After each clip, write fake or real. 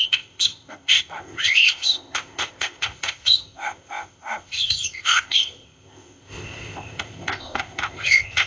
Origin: fake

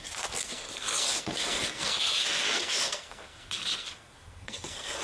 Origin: fake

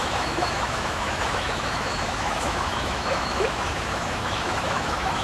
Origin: fake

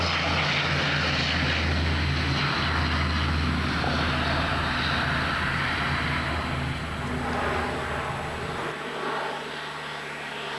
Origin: real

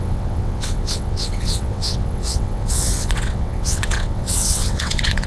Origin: fake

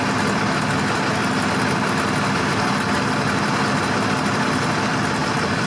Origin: real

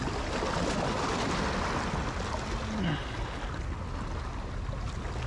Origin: real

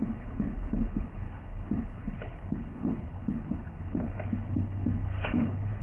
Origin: fake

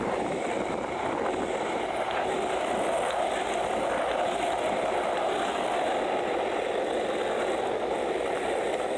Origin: real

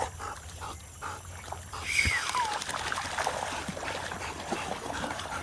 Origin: real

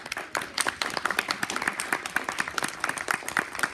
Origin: real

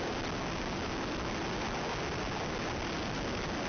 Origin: real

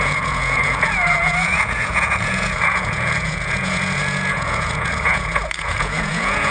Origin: fake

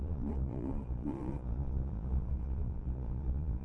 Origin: fake